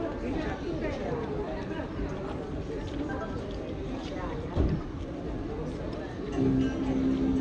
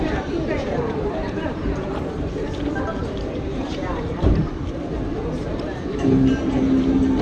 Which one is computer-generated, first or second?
second